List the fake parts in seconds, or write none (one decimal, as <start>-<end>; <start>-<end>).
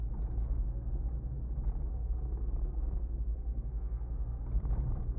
0.4-1.0; 1.9-4.7